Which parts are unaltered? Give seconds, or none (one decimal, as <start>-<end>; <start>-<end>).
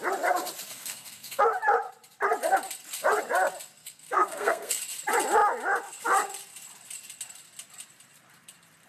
0.0-0.7; 1.4-3.8; 4.8-8.9